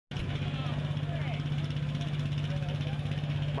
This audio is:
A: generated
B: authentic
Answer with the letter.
B